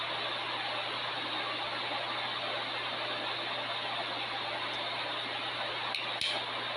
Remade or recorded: recorded